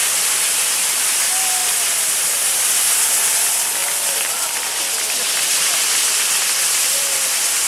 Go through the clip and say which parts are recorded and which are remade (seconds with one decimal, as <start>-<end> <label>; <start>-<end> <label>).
0.0-1.6 recorded; 1.6-2.2 remade; 2.2-3.8 recorded; 3.8-7.2 remade; 7.2-7.7 recorded